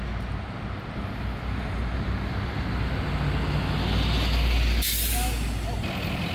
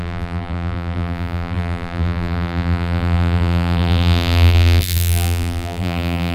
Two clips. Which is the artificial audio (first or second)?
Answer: second